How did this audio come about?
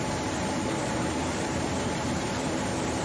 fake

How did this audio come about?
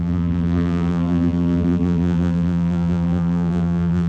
fake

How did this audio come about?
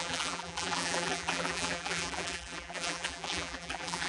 fake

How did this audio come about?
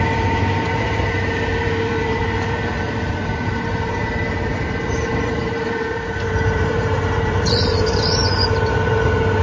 fake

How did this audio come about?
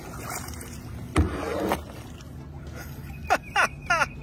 real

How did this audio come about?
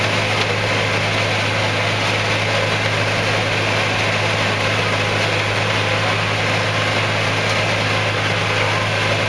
real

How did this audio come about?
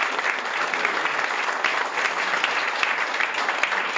real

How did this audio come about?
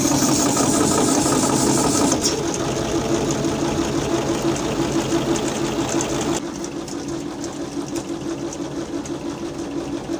real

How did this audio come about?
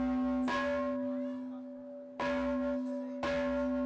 real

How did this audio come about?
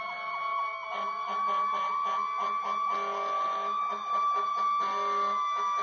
real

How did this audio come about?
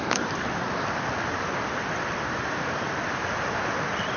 fake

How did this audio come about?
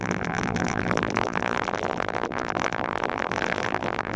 fake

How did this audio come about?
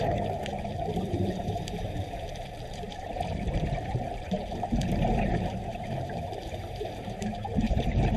fake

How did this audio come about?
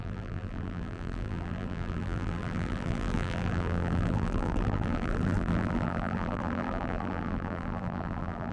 fake